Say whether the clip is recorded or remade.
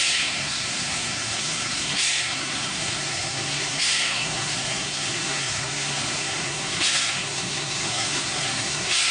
remade